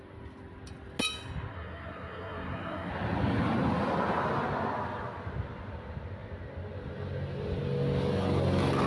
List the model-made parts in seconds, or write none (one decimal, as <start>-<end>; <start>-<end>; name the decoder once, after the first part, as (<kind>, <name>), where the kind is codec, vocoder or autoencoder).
1.5-2.9 (codec, SNAC)